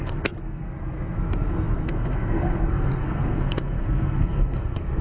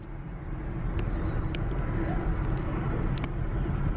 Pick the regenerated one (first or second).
first